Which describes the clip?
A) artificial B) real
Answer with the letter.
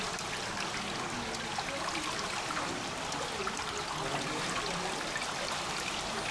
B